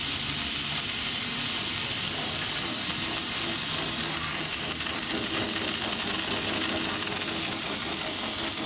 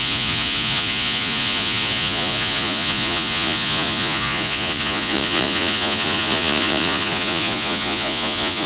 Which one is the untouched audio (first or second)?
first